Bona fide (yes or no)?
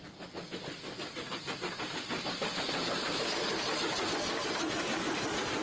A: yes